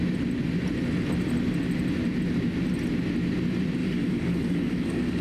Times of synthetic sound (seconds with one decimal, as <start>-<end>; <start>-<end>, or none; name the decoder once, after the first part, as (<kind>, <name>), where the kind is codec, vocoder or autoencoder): 3.8-5.2 (codec, DAC)